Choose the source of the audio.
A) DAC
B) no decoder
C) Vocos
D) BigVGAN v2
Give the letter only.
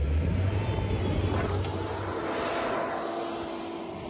B